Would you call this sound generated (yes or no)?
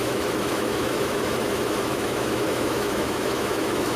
yes